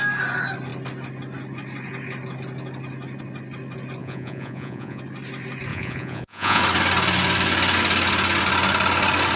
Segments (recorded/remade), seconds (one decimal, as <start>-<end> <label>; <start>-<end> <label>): 0.0-4.0 recorded; 4.0-5.0 remade; 5.0-5.7 recorded; 5.7-6.6 remade; 6.6-9.4 recorded